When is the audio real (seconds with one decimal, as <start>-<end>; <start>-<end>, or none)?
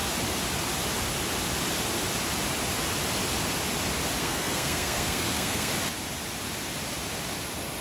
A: 0.0-4.2; 5.7-7.8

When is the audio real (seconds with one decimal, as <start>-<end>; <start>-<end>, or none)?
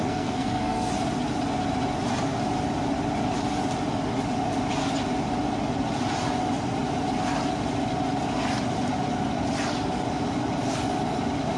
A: 0.9-11.6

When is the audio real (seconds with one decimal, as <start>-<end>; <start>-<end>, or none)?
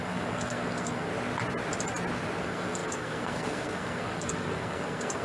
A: 1.1-2.4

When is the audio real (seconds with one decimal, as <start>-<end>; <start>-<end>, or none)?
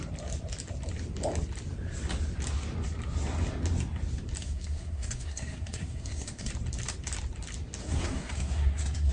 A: 0.0-4.4; 6.5-7.8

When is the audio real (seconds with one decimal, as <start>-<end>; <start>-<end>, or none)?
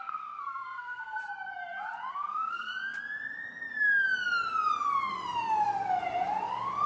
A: 1.2-2.1; 2.7-6.9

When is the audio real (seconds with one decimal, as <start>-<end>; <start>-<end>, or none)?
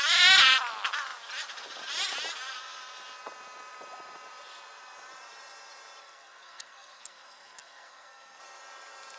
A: 0.0-6.0; 8.4-9.2